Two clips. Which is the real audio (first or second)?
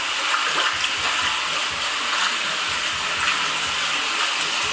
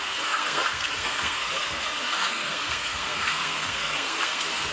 first